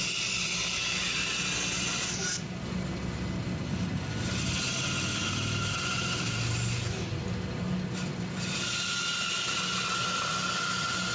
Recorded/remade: recorded